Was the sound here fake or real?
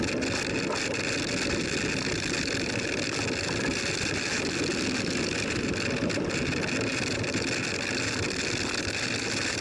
fake